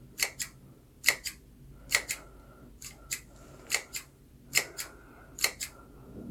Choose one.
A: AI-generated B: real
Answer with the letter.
B